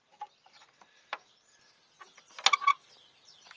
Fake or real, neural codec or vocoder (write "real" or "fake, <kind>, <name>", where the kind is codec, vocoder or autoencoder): real